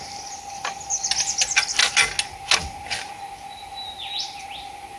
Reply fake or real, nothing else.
real